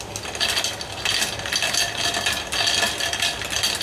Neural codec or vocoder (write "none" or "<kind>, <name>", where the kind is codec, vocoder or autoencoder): none